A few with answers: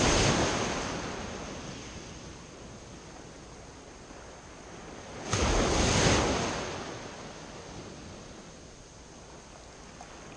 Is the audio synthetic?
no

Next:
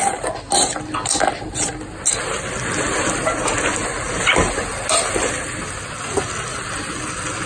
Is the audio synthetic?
no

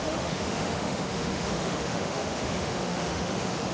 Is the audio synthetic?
yes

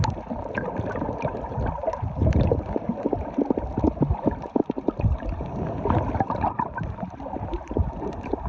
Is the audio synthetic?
no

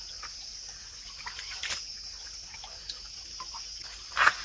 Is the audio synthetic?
no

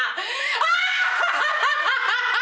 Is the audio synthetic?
yes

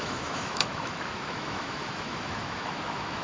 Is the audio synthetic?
yes